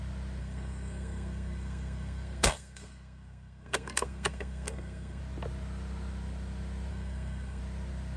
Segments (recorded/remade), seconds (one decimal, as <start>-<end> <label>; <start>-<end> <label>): 0.0-0.4 recorded; 0.4-5.2 remade; 5.2-6.9 recorded; 6.9-7.6 remade; 7.6-8.2 recorded